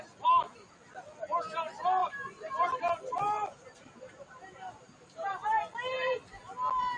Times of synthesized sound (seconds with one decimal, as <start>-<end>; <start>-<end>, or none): 2.0-5.3